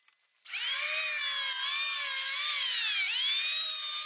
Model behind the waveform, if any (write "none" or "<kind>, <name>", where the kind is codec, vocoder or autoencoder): none